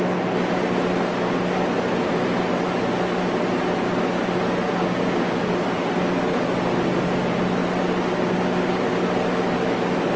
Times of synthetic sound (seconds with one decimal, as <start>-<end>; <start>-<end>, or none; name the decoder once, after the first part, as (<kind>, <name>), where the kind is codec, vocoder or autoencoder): 4.8-5.3 (codec, DAC)